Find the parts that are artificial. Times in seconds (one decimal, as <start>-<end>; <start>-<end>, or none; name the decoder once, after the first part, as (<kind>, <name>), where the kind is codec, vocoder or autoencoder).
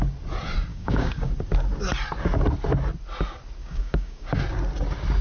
0.7-1.3 (codec, DAC); 3.6-4.4